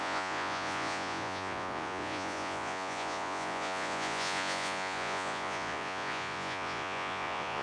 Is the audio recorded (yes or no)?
no